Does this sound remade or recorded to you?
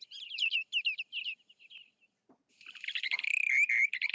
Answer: recorded